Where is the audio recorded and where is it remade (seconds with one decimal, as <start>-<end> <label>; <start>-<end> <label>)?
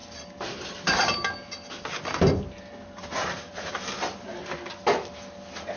0.0-5.8 recorded